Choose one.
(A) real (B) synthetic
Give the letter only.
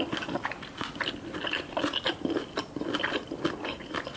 A